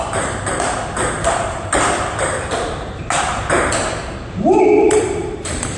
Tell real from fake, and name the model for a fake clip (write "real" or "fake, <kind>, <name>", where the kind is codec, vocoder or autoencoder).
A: fake, vocoder, BigVGAN v2